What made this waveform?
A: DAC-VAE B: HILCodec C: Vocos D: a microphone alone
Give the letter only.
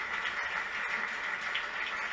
D